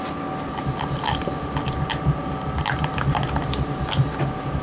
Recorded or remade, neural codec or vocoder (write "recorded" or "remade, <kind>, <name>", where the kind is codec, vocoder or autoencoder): recorded